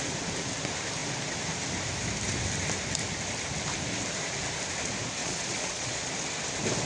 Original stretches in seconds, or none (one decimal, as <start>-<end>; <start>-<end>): 0.0-5.2; 6.1-6.9